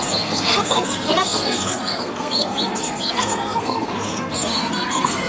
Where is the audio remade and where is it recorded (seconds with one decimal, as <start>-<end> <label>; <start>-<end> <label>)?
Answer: 0.0-5.3 remade